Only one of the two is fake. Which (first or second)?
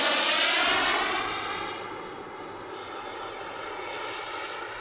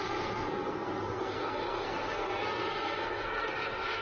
second